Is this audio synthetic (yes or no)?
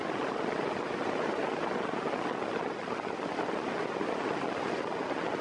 no